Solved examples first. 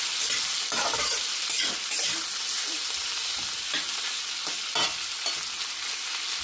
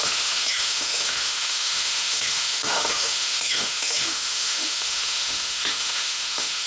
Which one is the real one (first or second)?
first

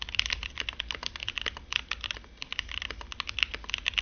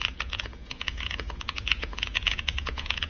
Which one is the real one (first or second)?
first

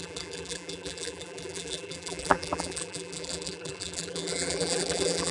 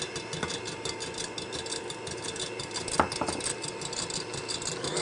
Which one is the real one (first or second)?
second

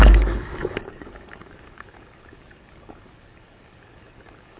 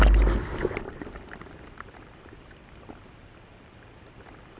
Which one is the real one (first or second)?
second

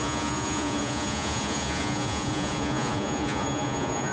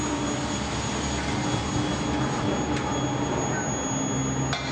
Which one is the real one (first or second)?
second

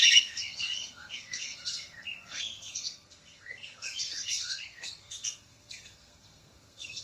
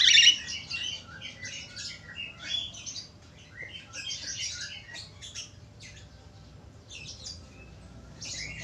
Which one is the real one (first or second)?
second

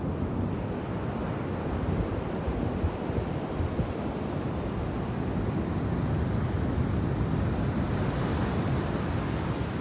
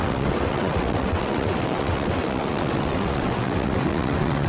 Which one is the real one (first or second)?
first